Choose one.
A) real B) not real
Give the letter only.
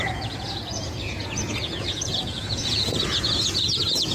B